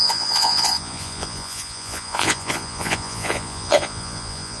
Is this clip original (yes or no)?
no